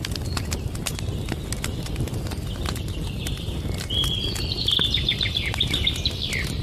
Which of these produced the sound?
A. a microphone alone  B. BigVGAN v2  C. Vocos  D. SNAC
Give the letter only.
A